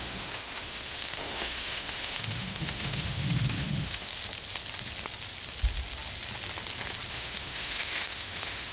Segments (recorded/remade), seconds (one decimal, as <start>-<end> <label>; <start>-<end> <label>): 0.0-4.1 remade; 4.1-7.1 recorded; 7.1-8.7 remade